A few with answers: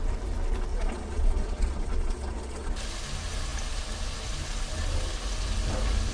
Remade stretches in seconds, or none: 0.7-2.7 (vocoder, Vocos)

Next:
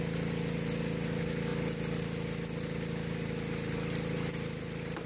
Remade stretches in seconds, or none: none

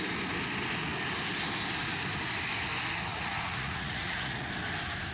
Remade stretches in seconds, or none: 3.1-4.5 (vocoder, Vocos)

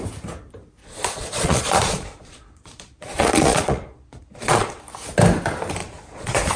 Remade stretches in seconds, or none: 0.8-4.8 (vocoder, Vocos); 5.8-6.6

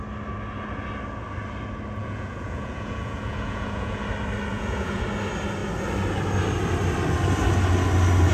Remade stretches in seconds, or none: 2.0-4.0 (vocoder, Vocos); 4.5-5.0